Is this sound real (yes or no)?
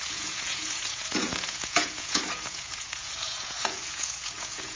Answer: no